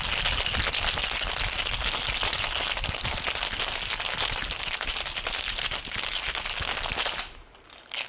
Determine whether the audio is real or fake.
real